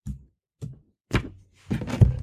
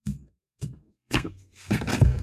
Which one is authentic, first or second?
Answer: first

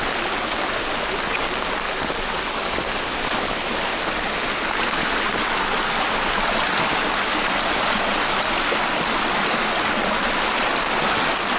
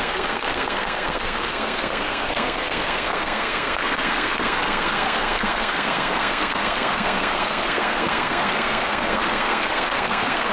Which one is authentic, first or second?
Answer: first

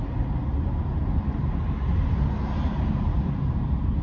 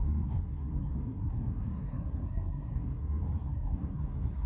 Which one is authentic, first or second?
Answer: first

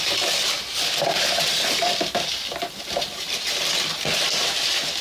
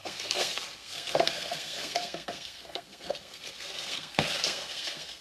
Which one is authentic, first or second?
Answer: first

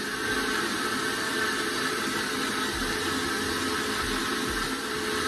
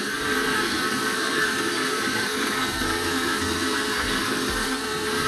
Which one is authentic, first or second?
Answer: first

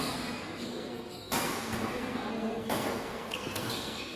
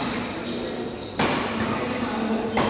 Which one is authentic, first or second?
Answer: second